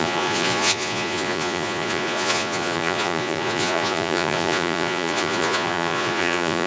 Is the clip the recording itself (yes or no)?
no